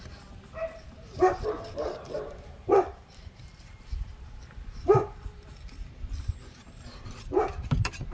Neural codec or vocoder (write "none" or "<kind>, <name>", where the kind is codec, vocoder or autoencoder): vocoder, BigVGAN v2